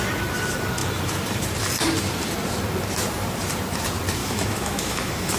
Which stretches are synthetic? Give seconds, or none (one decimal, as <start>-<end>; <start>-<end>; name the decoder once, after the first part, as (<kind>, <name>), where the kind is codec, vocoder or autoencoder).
4.2-5.4 (autoencoder, DAC-VAE)